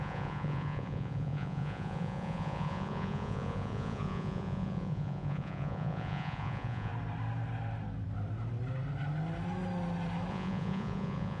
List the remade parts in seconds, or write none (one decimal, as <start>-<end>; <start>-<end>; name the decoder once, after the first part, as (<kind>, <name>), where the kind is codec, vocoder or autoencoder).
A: 0.0-6.9 (vocoder, Vocos); 10.3-11.4